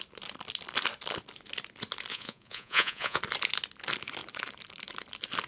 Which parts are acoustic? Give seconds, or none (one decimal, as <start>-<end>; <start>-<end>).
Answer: 0.0-2.1; 3.2-5.5